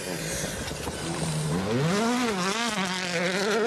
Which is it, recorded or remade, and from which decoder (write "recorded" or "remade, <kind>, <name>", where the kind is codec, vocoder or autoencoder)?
recorded